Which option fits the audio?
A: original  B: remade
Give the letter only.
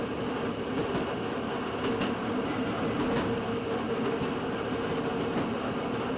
A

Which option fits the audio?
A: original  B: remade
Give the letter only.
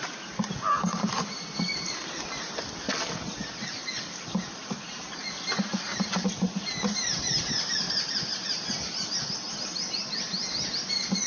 A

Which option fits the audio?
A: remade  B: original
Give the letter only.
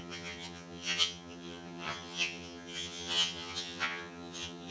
A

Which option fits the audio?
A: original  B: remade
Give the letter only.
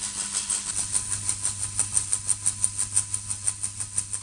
A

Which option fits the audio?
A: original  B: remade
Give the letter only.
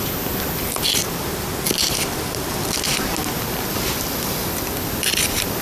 A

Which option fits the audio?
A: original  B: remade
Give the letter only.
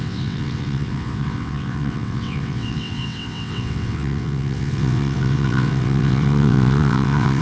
B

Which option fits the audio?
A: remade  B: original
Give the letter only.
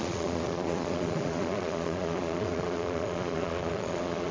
A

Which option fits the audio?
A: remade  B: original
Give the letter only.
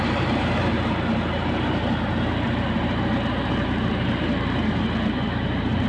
A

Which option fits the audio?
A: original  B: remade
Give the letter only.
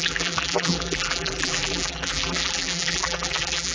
B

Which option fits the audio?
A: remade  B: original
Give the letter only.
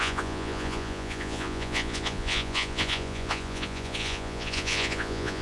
A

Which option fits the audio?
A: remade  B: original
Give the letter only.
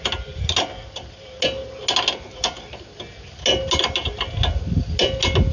B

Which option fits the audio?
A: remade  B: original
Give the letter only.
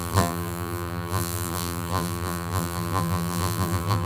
A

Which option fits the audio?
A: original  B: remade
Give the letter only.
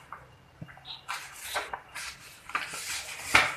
A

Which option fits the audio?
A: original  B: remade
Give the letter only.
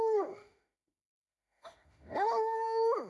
B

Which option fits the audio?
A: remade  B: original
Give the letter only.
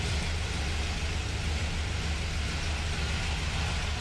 B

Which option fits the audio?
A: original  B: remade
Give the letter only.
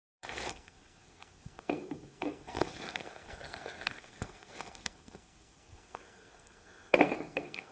B